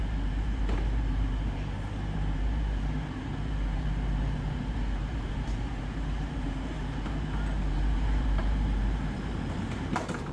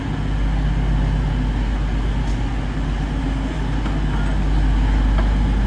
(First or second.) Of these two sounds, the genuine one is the second